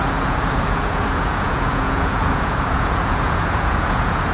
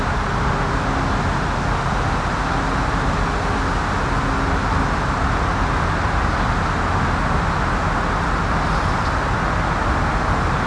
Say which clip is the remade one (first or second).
first